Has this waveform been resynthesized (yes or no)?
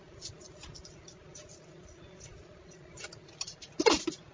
no